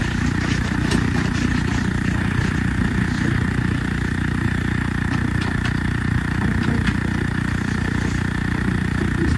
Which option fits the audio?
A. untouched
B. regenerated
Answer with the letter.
A